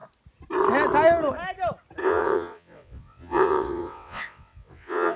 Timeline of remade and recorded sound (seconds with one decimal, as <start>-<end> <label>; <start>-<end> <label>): 0.0-2.0 recorded; 2.0-5.2 remade